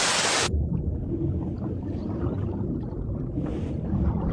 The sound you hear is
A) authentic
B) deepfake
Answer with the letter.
A